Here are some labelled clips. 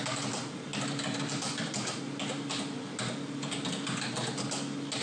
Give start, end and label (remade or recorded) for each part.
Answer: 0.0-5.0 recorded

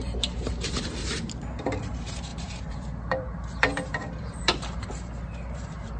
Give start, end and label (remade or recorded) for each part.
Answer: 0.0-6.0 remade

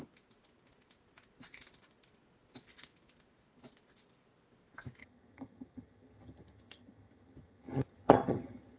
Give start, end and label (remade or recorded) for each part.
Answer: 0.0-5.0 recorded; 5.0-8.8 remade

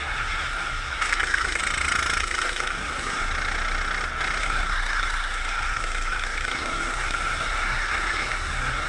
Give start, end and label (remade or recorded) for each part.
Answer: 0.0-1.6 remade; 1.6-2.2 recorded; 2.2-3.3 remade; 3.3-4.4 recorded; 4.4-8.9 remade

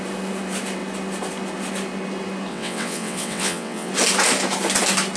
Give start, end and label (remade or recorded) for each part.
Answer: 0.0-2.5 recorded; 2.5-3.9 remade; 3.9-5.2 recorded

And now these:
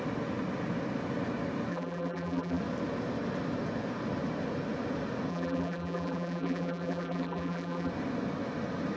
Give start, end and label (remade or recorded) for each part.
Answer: 0.0-1.7 recorded; 1.7-2.6 remade; 2.6-5.3 recorded; 5.3-7.9 remade; 7.9-9.0 recorded

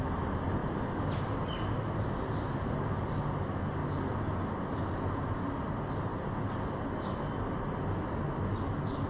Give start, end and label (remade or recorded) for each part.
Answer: 0.0-9.1 recorded